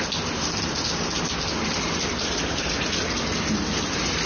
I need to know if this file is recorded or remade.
recorded